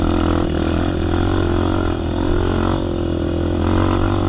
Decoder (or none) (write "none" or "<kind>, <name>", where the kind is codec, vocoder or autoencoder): none